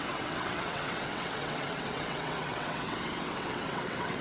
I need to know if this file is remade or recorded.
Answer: remade